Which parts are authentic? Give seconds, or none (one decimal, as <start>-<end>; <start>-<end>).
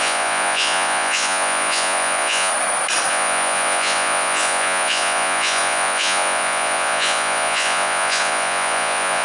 2.5-3.1